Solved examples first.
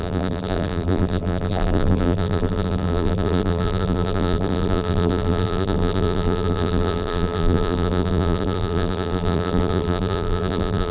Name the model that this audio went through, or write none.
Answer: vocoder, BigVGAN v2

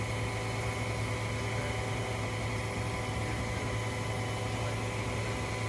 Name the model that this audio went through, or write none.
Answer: none